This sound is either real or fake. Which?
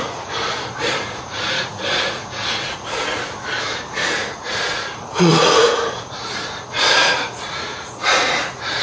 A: fake